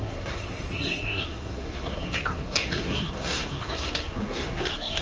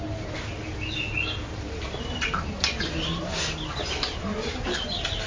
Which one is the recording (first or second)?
second